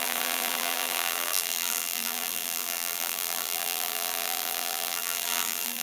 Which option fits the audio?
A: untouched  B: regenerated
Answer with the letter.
B